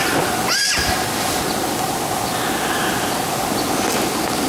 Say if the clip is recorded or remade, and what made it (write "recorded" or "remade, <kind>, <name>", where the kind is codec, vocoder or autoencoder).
recorded